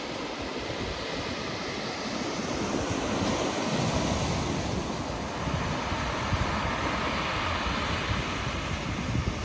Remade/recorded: recorded